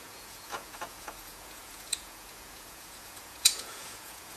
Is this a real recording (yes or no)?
no